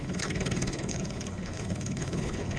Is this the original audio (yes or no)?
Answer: no